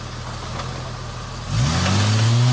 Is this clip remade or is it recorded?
recorded